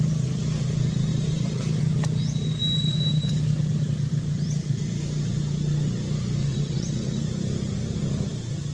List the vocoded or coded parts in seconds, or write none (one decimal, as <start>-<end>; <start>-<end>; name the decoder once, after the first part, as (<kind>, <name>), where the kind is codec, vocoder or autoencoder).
6.4-7.2 (vocoder, WaveNeXt)